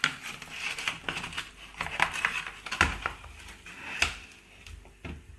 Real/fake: real